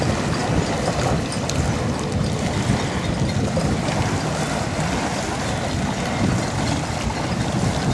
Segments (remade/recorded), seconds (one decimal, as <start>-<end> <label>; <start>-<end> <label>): 0.0-7.9 recorded